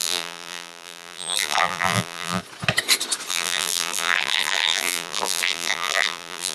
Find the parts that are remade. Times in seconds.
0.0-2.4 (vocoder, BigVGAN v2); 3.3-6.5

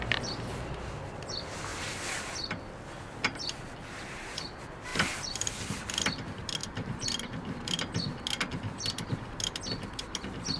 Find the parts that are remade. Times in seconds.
4.9-5.6 (vocoder, BigVGAN v2); 6.6-9.1

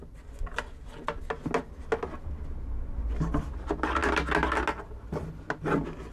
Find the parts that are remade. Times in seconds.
none

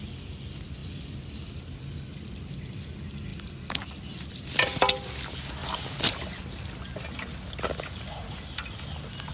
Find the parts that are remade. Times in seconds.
0.8-1.5 (vocoder, BigVGAN v2); 3.3-4.4; 5.6-6.4

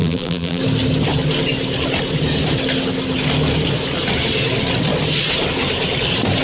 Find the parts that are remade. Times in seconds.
0.0-0.6 (vocoder, BigVGAN v2)

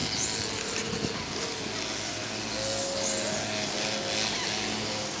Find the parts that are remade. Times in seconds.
none